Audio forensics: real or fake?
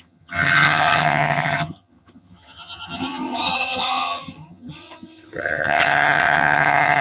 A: fake